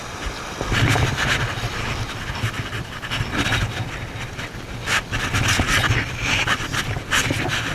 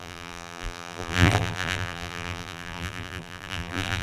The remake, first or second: second